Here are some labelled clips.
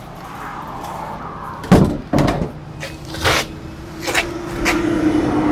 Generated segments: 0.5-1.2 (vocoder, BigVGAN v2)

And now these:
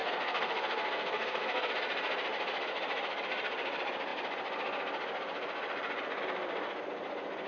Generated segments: 0.0-1.7 (codec, SNAC)